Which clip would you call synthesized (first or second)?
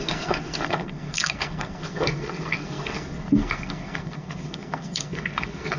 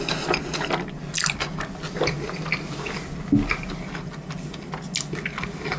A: first